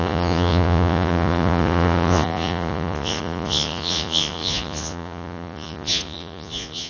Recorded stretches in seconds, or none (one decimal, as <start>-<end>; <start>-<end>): none